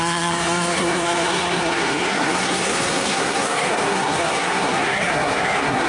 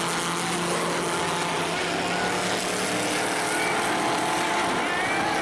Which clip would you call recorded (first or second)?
second